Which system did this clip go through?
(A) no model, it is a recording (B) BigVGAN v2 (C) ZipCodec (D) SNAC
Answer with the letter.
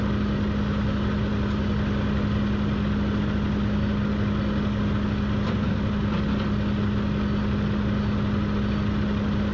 A